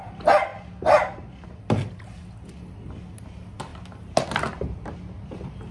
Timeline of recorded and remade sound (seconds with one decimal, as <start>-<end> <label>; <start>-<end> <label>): 0.0-5.7 recorded